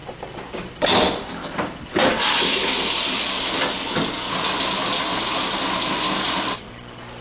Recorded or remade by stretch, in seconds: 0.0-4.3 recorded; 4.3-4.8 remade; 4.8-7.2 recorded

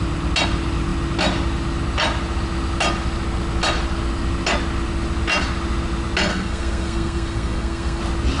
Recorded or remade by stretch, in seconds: 0.0-6.3 recorded; 6.3-8.0 remade; 8.0-8.4 recorded

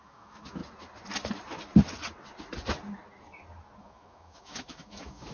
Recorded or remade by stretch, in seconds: 0.0-0.6 remade; 0.6-3.8 recorded; 3.8-5.3 remade

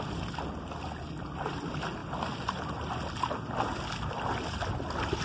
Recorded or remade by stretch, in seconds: 0.0-5.2 recorded

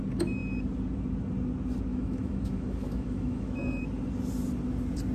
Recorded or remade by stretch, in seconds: 0.0-1.9 recorded; 1.9-3.8 remade; 3.8-5.1 recorded

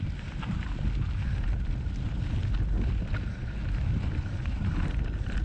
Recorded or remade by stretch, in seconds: 0.0-5.4 recorded